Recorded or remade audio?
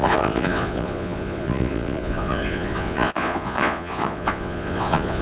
remade